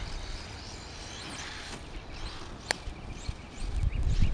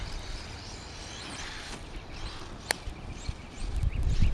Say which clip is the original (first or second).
first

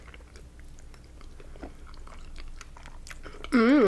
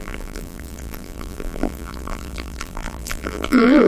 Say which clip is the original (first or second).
first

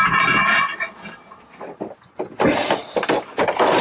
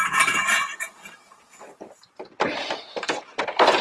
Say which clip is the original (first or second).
first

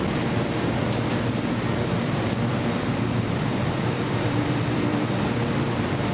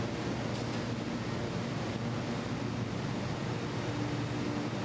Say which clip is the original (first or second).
second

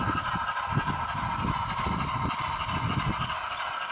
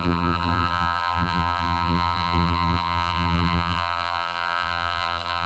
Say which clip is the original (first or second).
first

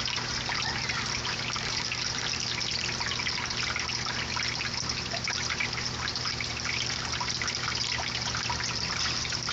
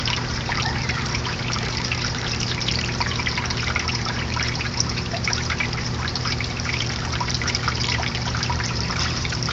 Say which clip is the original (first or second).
first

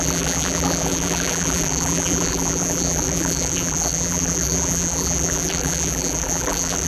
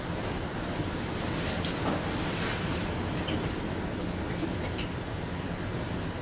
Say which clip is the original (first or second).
second